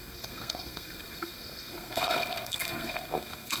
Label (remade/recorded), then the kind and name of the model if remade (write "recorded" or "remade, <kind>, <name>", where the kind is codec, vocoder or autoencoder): remade, codec, SNAC